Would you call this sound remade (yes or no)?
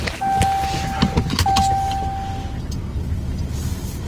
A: no